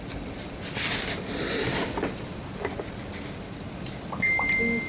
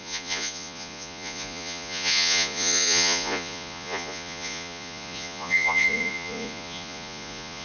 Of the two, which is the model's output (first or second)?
second